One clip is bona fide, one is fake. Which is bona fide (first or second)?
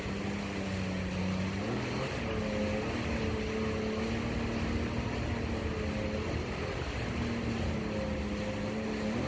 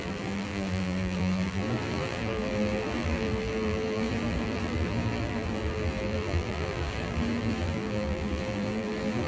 first